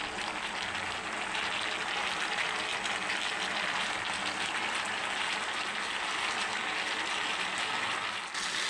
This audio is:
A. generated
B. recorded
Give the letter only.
B